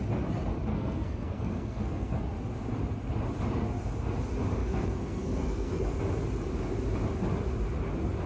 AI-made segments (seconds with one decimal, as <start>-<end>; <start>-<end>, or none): 0.7-2.2; 4.6-6.0